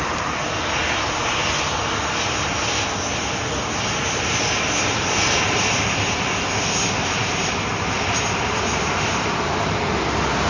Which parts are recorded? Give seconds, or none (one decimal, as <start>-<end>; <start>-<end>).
0.0-7.2; 8.2-10.5